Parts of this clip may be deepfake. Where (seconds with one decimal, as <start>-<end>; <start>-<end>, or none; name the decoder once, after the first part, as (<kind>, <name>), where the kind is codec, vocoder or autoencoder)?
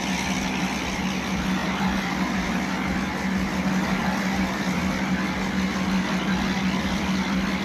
none